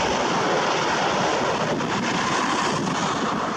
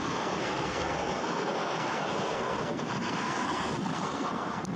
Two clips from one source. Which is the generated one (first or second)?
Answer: second